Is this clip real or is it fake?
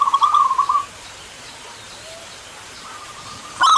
fake